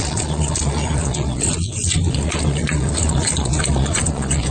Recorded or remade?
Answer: remade